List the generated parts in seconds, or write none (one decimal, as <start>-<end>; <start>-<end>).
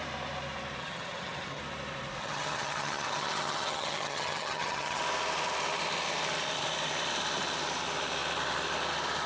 0.8-1.6; 2.2-5.0